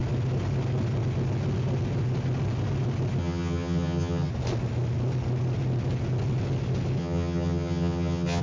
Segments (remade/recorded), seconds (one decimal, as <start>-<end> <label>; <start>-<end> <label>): 0.0-3.2 recorded; 3.2-4.3 remade; 4.3-7.0 recorded; 7.0-8.4 remade

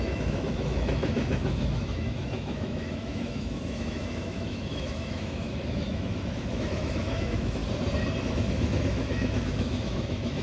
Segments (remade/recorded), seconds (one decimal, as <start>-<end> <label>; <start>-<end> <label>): 0.0-7.6 remade; 7.6-8.2 recorded; 8.2-10.4 remade

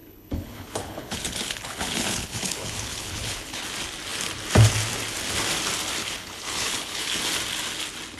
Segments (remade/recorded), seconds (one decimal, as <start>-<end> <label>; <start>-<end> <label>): 0.0-3.6 remade; 3.6-6.0 recorded; 6.0-7.2 remade; 7.2-8.2 recorded